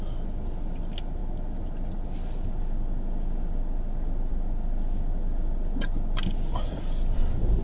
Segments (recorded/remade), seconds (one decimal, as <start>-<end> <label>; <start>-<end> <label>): 0.0-7.6 recorded